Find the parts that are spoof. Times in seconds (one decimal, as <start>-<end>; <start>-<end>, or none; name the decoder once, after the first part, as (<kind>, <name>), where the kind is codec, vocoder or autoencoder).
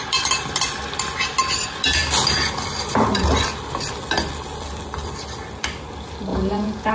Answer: 6.3-6.9 (vocoder, Vocos)